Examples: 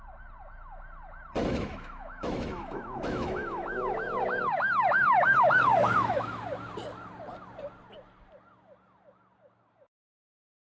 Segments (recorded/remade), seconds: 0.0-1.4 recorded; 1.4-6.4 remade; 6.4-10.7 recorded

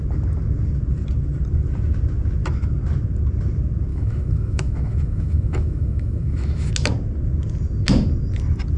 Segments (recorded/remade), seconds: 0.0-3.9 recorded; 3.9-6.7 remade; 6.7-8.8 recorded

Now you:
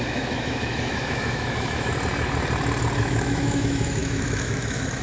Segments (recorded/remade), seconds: 0.0-1.9 remade; 1.9-3.0 recorded; 3.0-5.0 remade

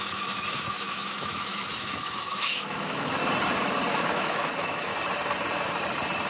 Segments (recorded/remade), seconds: 0.0-3.2 remade; 3.2-3.9 recorded; 3.9-4.9 remade; 4.9-6.3 recorded

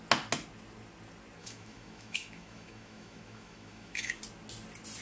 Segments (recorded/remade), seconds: 0.0-1.4 recorded; 1.4-4.2 remade; 4.2-5.0 recorded

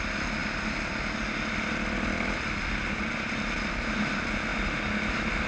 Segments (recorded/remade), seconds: 0.0-5.5 recorded